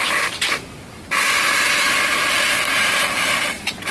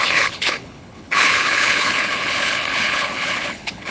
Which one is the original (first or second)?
first